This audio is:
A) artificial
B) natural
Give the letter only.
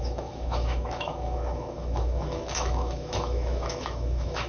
A